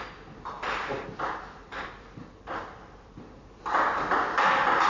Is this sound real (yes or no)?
yes